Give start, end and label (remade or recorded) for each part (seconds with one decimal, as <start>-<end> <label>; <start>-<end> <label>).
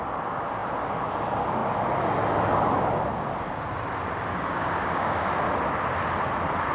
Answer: 0.0-4.3 recorded; 4.3-5.4 remade; 5.4-6.7 recorded